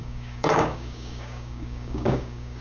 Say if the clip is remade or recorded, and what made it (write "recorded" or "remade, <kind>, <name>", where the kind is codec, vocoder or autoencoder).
remade, codec, DAC